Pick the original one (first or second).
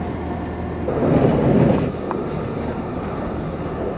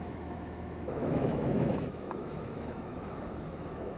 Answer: first